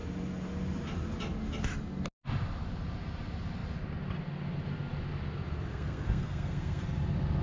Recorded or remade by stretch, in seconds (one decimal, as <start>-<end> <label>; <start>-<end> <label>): 0.0-5.7 recorded; 5.7-6.8 remade; 6.8-7.4 recorded